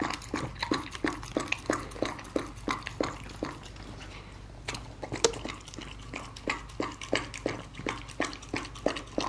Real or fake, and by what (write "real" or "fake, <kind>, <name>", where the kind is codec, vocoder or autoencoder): real